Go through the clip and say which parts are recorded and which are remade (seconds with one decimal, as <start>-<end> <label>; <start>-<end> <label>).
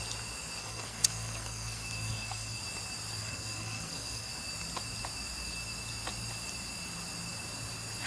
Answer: 0.0-0.6 recorded; 0.6-2.6 remade; 2.6-3.2 recorded; 3.2-4.3 remade; 4.3-8.1 recorded